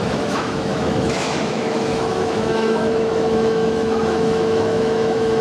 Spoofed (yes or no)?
yes